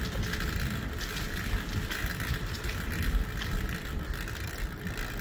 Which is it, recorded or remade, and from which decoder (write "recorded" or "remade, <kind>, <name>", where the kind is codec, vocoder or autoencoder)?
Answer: recorded